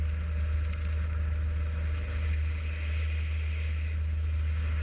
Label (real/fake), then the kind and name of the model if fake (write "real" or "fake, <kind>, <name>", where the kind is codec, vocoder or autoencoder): real